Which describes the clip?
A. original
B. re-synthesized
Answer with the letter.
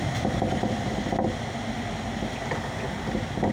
A